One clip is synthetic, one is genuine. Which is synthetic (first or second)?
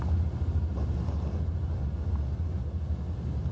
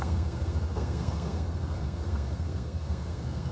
second